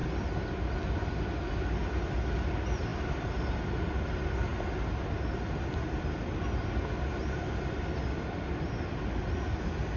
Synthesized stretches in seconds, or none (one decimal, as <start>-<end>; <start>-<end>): none